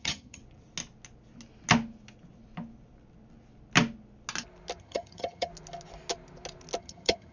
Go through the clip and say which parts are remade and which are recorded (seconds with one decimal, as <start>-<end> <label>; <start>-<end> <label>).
0.0-0.4 remade; 0.4-4.8 recorded; 4.8-5.5 remade; 5.5-6.8 recorded; 6.8-7.3 remade